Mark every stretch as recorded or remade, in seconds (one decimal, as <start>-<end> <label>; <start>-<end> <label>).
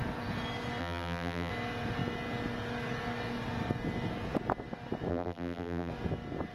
0.0-0.8 recorded; 0.8-1.5 remade; 1.5-5.1 recorded; 5.1-5.9 remade; 5.9-6.5 recorded